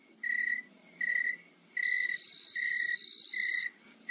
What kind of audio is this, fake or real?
real